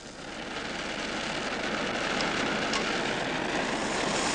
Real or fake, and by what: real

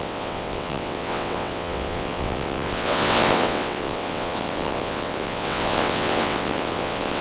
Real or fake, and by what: fake, vocoder, WaveNeXt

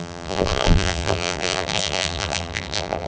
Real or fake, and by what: fake, vocoder, BigVGAN v2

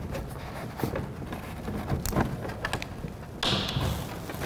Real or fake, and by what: real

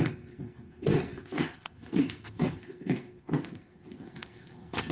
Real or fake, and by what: fake, codec, SNAC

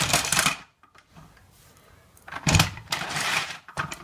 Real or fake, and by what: fake, vocoder, BigVGAN v2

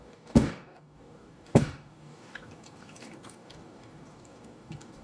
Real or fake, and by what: fake, codec, DAC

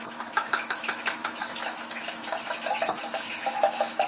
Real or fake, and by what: fake, autoencoder, DAC-VAE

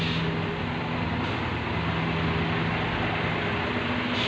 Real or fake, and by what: real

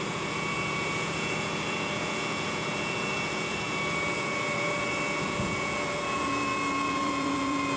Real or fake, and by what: fake, vocoder, Vocos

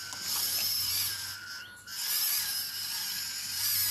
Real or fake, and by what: real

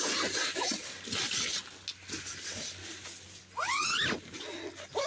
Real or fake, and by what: real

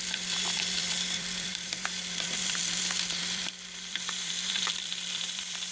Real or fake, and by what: fake, vocoder, BigVGAN v2